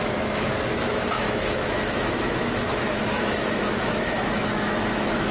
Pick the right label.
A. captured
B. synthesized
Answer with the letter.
B